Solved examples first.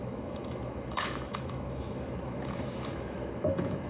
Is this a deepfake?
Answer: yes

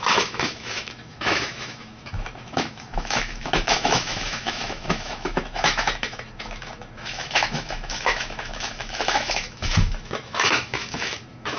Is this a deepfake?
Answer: yes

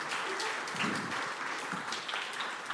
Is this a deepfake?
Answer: no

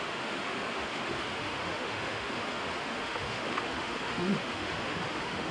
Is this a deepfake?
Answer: yes